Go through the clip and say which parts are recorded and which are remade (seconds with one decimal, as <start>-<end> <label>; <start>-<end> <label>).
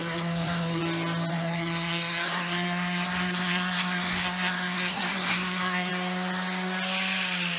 0.0-0.8 remade; 0.8-1.3 recorded; 1.3-5.9 remade; 5.9-7.6 recorded